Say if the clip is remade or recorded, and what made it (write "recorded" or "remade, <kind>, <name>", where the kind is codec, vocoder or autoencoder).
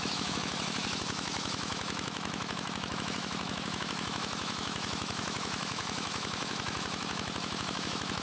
remade, autoencoder, DAC-VAE